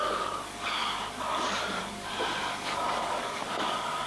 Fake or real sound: fake